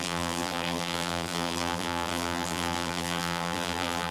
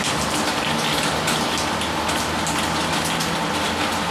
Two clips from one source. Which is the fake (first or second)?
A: first